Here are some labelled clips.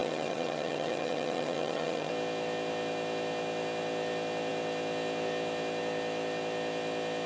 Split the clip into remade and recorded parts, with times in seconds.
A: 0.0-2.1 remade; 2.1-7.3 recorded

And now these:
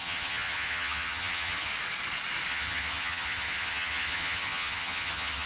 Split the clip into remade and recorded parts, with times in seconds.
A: 0.0-1.7 remade; 1.7-2.5 recorded; 2.5-5.5 remade

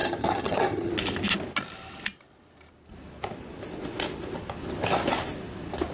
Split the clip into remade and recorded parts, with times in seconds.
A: 0.0-0.9 remade; 0.9-5.9 recorded

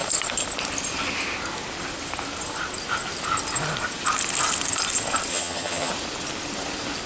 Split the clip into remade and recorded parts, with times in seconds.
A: 0.0-5.3 recorded; 5.3-5.9 remade; 5.9-7.1 recorded